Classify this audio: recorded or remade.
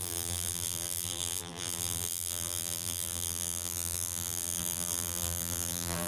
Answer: remade